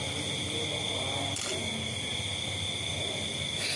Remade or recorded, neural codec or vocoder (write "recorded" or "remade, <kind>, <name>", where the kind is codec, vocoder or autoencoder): recorded